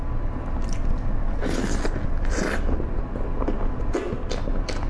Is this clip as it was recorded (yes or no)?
yes